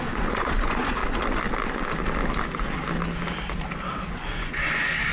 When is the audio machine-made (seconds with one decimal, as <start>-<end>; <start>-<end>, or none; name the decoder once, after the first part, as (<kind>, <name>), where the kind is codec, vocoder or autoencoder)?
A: 0.0-1.0 (vocoder, Vocos); 4.1-5.1